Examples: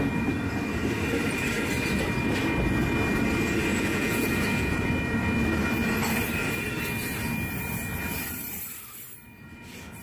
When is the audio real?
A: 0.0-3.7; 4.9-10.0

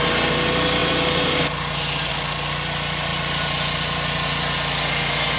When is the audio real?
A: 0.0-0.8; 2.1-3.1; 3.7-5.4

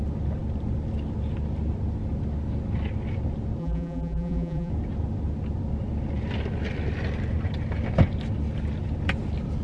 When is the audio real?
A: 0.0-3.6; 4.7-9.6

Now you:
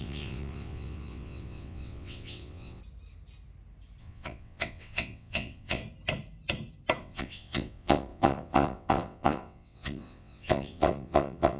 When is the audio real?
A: 2.8-4.0; 5.8-7.0

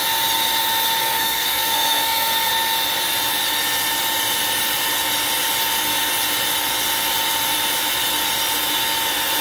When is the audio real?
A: 0.0-1.0; 2.5-9.4

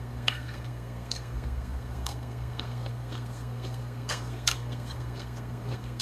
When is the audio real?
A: none

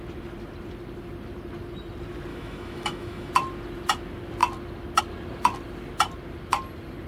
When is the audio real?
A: 0.0-2.3; 3.3-7.1

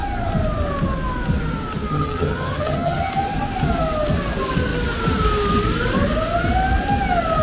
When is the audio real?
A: 0.0-1.9; 3.1-7.4